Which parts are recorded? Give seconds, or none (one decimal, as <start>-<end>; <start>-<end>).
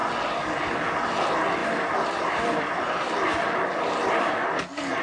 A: 0.0-1.6; 4.6-5.0